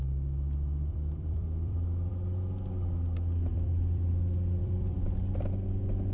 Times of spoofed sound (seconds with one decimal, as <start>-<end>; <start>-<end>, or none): 0.9-2.1; 3.5-4.1; 4.6-5.5